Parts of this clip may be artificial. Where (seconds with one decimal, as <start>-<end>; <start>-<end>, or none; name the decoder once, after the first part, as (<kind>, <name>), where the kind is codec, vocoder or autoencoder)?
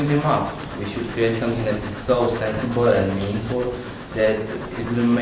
1.1-4.2 (autoencoder, DAC-VAE)